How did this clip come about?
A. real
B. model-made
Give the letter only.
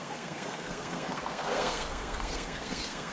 B